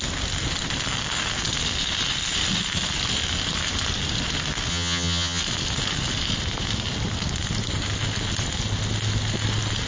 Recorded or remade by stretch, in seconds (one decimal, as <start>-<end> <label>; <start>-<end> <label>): 0.0-4.7 recorded; 4.7-5.4 remade; 5.4-9.9 recorded